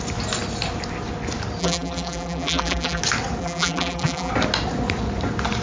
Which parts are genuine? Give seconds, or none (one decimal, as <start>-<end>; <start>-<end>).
0.0-1.6; 3.0-3.4; 4.3-5.6